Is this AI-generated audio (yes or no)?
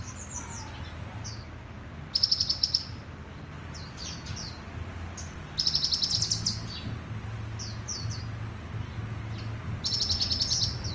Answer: no